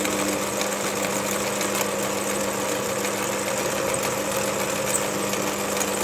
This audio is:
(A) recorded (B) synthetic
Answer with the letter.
A